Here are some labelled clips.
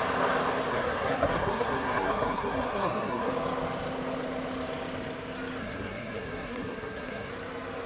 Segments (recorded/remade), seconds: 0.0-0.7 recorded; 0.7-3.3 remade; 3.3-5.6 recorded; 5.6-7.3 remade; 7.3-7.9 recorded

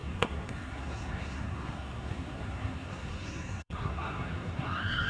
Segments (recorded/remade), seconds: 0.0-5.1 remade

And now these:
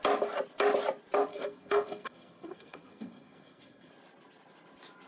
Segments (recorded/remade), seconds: 0.0-1.3 recorded; 1.3-3.9 remade; 3.9-5.1 recorded

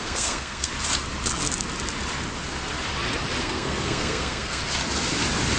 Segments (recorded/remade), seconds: 0.0-0.7 remade; 0.7-3.4 recorded; 3.4-4.6 remade; 4.6-5.6 recorded